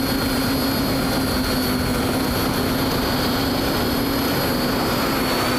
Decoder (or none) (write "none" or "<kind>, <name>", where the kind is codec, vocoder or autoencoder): none